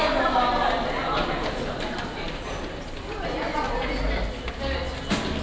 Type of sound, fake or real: real